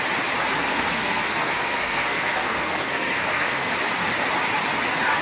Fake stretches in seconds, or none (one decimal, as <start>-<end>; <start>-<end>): 0.6-3.7